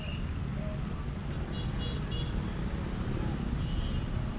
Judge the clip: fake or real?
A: real